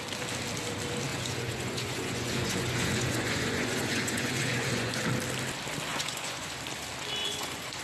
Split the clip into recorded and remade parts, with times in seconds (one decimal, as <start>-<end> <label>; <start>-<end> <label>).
0.0-1.1 recorded; 1.1-5.0 remade; 5.0-5.9 recorded; 5.9-6.6 remade; 6.6-7.2 recorded; 7.2-7.8 remade